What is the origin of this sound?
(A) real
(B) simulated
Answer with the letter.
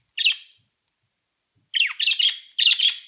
A